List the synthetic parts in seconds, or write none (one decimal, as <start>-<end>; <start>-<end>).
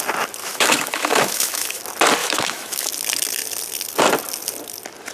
0.4-1.8; 2.2-2.9